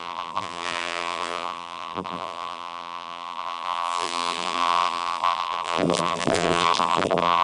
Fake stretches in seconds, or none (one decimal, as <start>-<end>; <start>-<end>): 0.0-7.4